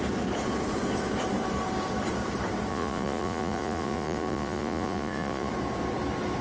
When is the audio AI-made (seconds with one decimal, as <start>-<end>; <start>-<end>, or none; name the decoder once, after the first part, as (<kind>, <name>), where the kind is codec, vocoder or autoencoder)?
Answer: 2.7-5.5 (vocoder, Vocos)